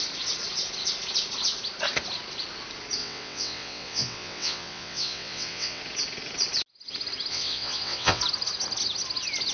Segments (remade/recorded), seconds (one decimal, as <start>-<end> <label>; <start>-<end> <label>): 0.0-3.0 recorded; 3.0-5.8 remade; 5.8-7.3 recorded; 7.3-8.2 remade; 8.2-9.5 recorded